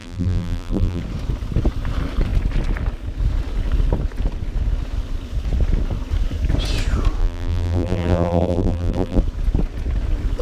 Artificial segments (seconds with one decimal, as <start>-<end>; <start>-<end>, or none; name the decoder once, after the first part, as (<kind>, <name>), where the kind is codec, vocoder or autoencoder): 0.0-1.0 (vocoder, BigVGAN v2); 7.2-9.2